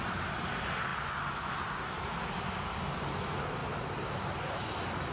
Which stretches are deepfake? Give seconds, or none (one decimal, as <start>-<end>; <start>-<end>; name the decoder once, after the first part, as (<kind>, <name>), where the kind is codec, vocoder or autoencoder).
none